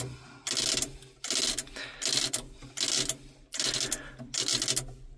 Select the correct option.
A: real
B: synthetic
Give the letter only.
A